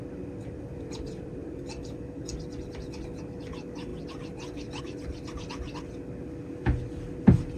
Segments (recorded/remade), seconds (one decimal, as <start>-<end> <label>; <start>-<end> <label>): 0.0-1.4 recorded; 1.4-2.3 remade; 2.3-7.6 recorded